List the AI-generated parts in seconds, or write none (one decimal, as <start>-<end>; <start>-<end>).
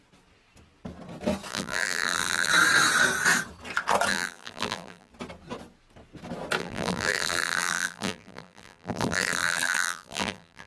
1.5-2.5; 4.1-5.1; 6.6-10.7